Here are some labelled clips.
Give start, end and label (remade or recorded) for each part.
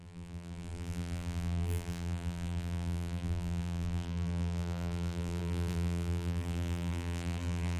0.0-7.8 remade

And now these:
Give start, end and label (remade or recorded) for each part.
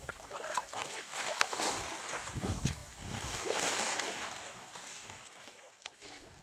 0.0-6.4 remade